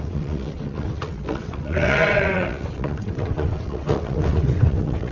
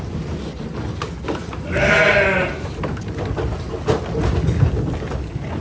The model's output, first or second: first